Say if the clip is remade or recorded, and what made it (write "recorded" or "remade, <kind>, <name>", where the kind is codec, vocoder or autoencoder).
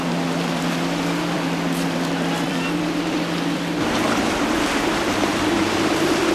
remade, vocoder, BigVGAN v2